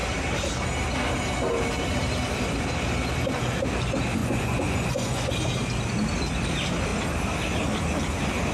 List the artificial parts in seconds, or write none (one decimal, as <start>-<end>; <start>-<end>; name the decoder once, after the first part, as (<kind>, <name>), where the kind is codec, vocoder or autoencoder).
4.2-5.3 (vocoder, Vocos)